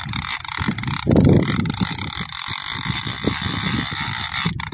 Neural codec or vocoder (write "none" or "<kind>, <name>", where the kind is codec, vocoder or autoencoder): none